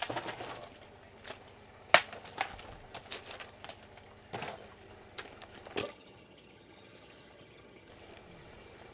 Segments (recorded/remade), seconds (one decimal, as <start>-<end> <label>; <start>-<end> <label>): 0.0-5.8 recorded; 5.8-7.9 remade; 7.9-8.9 recorded